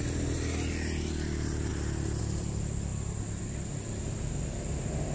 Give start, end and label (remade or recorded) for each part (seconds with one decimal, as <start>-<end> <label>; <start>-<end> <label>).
0.0-5.1 recorded